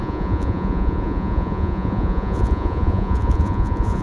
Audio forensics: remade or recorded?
remade